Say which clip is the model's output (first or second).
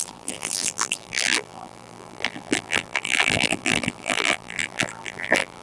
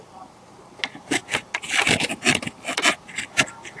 first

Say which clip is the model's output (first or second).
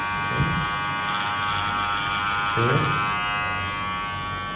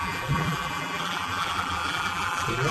second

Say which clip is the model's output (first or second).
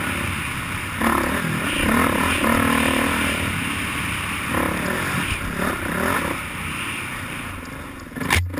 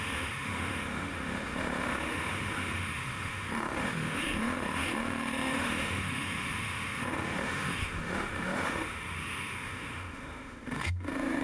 second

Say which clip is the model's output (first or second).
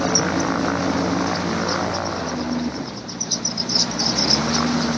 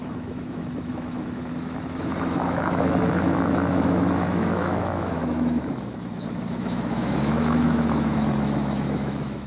second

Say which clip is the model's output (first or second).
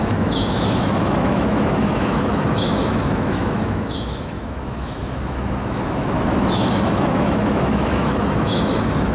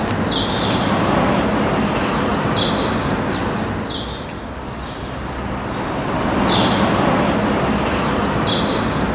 first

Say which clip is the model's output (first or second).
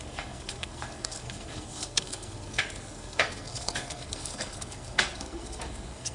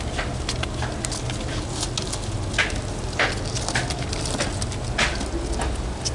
first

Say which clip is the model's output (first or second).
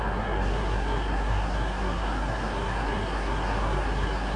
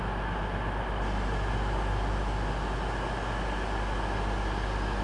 first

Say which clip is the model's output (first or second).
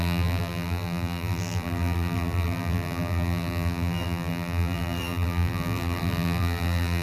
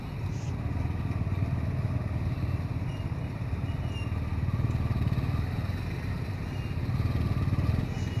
first